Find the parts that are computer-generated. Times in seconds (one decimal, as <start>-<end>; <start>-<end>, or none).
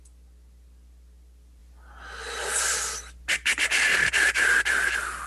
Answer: none